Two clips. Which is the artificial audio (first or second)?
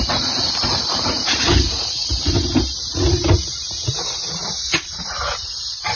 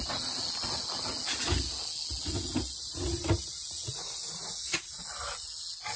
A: first